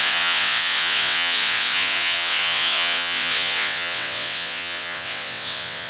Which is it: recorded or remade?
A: remade